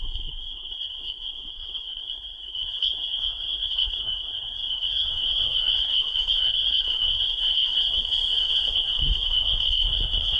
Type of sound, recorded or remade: remade